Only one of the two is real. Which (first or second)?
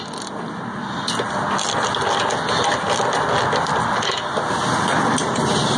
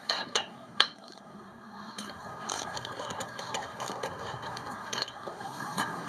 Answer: first